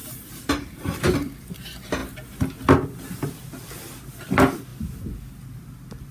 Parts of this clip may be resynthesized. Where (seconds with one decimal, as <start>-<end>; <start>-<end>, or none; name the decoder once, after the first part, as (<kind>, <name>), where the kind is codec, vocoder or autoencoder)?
0.0-1.4 (vocoder, BigVGAN v2)